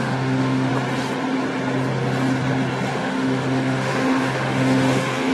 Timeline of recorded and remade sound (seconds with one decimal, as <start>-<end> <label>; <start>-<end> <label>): 0.0-0.7 remade; 0.7-2.9 recorded; 2.9-5.3 remade

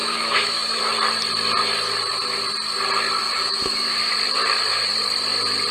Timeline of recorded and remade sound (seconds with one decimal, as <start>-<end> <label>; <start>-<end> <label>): 0.0-0.8 remade; 0.8-3.2 recorded; 3.2-4.1 remade; 4.1-5.7 recorded

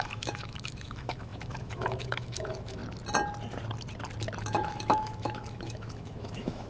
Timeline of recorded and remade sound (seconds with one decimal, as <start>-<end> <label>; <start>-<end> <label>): 0.0-2.8 remade; 2.8-4.4 recorded; 4.4-6.7 remade

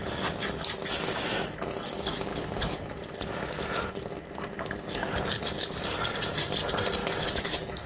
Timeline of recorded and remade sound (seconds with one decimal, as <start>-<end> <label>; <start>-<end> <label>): 0.0-7.0 recorded; 7.0-7.9 remade

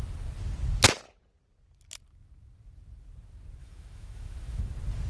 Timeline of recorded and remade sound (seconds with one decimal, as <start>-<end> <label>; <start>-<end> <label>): 0.0-3.6 recorded; 3.6-4.6 remade; 4.6-5.1 recorded

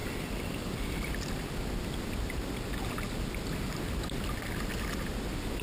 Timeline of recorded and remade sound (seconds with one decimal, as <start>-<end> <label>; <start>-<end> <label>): 0.0-5.6 recorded